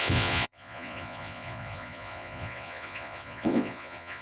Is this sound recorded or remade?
remade